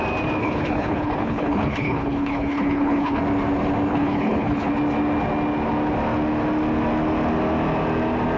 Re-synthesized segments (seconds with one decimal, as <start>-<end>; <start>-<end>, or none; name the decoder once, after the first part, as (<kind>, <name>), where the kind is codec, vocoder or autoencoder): 0.4-3.2 (codec, HILCodec); 3.9-4.7